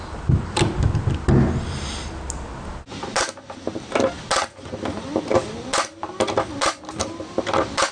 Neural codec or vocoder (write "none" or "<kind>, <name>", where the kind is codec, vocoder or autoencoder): none